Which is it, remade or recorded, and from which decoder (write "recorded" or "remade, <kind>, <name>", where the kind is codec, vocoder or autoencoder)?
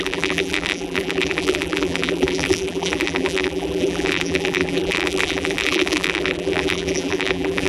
remade, vocoder, BigVGAN v2